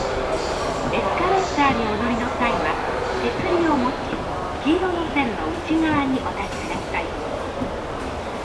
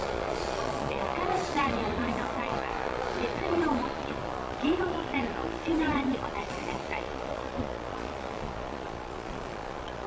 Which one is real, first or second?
first